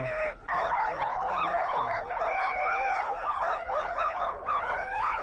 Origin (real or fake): fake